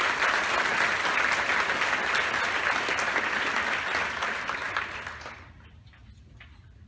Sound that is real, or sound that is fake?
real